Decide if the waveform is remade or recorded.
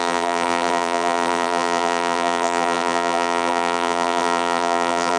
remade